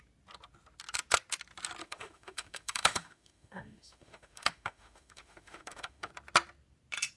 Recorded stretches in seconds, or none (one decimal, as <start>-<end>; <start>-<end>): 0.0-1.8; 6.1-7.2